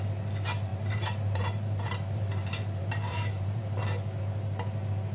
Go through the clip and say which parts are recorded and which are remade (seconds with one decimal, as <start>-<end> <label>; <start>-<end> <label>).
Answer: 0.0-0.7 recorded; 0.7-3.8 remade; 3.8-5.1 recorded